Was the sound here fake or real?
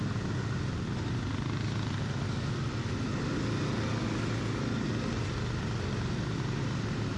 real